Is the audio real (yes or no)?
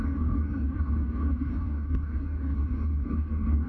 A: no